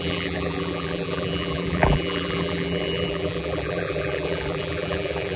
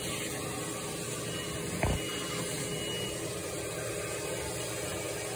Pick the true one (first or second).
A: second